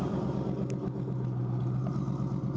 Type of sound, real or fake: real